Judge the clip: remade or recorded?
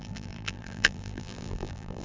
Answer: remade